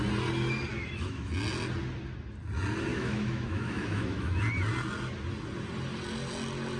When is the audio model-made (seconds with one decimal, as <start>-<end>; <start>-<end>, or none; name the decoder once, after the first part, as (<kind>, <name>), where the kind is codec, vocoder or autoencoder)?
0.7-1.3 (autoencoder, DAC-VAE); 2.9-4.4